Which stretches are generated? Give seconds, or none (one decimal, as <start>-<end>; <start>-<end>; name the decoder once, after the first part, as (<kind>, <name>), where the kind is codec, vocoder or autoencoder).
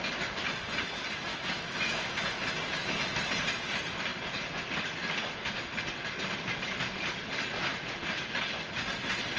1.3-2.2 (autoencoder, DAC-VAE); 2.8-3.3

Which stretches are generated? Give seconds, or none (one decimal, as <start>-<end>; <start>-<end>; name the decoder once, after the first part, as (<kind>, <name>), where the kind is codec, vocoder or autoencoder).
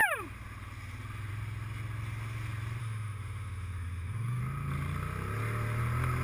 2.8-4.4 (autoencoder, DAC-VAE)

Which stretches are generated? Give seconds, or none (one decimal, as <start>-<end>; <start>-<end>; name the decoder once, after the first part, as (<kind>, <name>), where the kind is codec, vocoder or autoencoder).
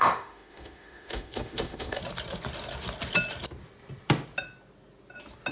0.0-2.0 (autoencoder, DAC-VAE)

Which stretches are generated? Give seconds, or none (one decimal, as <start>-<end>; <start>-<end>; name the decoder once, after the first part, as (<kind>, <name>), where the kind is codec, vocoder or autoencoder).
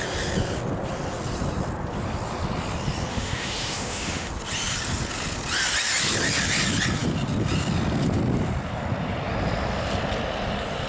3.1-4.3 (autoencoder, DAC-VAE)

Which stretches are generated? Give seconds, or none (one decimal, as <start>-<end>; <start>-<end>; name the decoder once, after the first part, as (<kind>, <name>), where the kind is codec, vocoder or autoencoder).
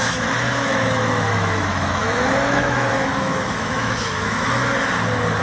0.0-4.6 (autoencoder, DAC-VAE)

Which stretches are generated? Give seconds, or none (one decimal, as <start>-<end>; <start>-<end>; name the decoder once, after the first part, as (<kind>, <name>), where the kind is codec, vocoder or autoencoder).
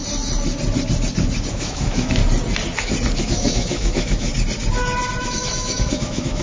1.5-2.2 (autoencoder, DAC-VAE); 3.2-4.3; 5.2-6.4